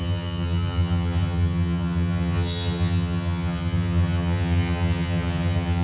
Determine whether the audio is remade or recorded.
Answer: remade